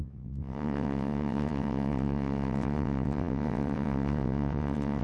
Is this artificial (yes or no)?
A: yes